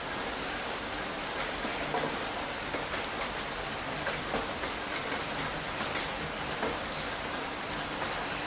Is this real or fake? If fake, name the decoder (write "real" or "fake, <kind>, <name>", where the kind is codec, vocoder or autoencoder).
real